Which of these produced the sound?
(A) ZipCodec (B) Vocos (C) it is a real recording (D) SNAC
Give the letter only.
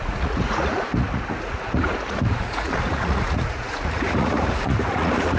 B